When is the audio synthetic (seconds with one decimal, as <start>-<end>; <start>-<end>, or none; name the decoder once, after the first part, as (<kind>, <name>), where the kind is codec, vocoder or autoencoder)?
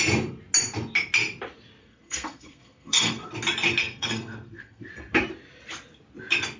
1.8-3.3 (codec, SNAC); 3.8-4.9